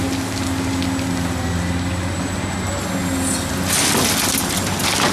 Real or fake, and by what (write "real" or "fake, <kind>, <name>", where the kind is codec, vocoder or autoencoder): real